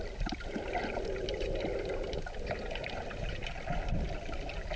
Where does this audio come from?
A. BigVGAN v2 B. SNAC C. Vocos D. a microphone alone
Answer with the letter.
D